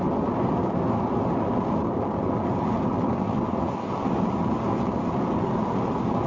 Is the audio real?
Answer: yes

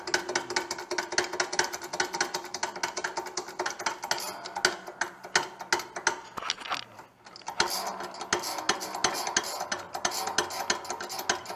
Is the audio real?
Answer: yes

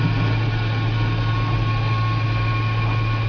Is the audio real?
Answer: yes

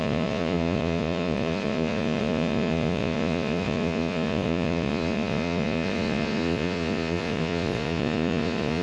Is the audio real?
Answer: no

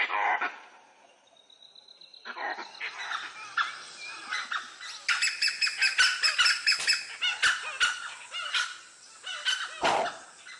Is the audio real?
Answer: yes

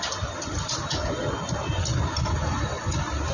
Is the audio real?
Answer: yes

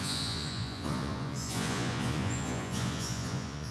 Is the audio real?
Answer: no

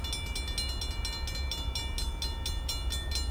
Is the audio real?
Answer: yes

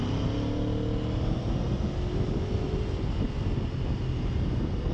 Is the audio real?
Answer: yes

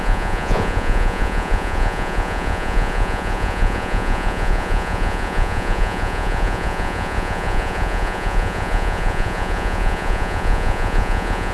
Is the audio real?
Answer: no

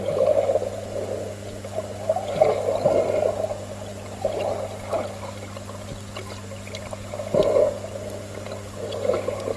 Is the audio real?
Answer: yes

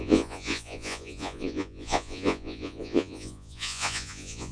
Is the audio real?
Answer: no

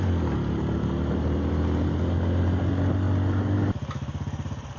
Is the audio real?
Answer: yes